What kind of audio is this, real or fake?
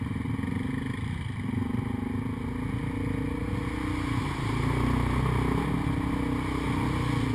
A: real